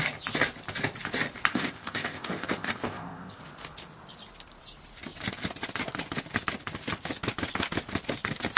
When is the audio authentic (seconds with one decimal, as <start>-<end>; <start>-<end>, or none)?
0.0-1.5; 3.4-8.6